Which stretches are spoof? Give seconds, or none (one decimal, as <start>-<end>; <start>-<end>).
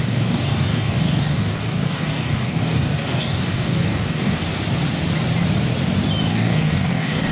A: 0.0-4.4; 6.3-7.3